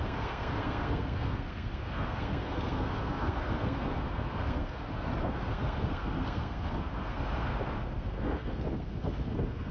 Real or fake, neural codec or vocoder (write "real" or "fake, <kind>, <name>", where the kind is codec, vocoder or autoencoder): fake, codec, SNAC